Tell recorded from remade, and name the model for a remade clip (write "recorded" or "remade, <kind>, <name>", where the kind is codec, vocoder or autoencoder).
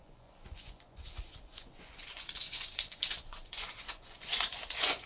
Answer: remade, vocoder, Vocos